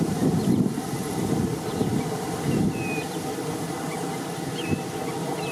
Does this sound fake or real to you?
fake